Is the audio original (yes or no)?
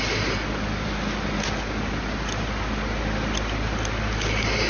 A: yes